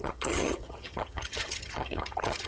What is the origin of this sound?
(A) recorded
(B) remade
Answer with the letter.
B